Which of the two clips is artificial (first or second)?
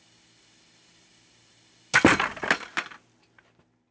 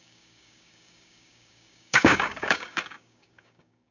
second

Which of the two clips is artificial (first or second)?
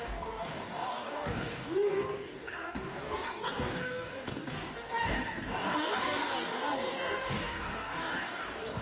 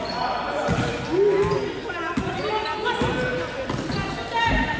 first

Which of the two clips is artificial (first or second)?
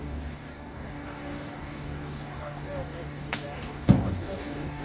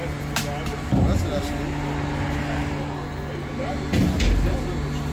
first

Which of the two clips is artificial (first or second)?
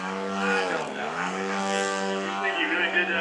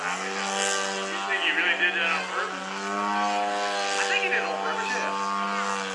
first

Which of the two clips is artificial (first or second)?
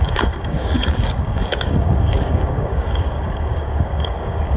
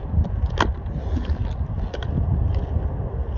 first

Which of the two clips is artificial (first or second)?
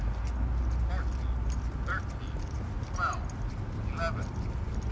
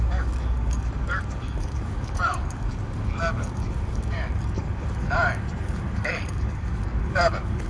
second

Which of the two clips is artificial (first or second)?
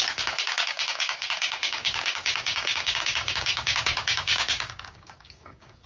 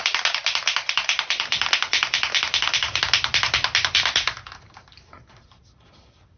first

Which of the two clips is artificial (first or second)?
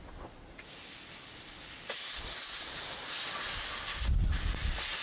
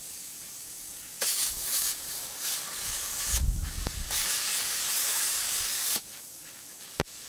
second